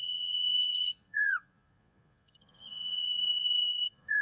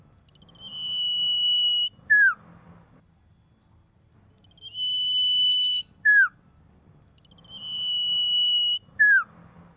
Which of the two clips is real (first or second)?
second